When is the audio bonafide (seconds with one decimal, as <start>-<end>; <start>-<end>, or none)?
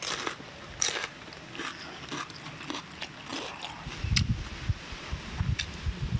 0.0-6.2